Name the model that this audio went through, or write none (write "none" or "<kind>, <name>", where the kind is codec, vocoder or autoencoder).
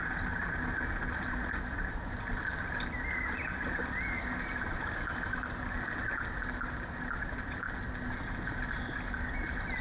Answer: none